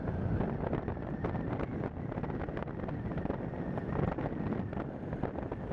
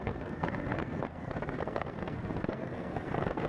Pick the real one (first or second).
first